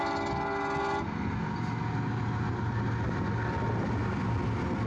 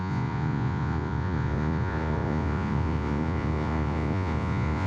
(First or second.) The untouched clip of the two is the first